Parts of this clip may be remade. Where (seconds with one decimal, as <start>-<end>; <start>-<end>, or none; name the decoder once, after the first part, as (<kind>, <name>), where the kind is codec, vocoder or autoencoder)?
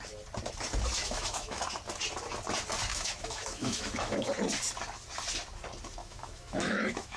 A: 1.0-1.6 (autoencoder, DAC-VAE); 2.9-4.3; 6.0-7.2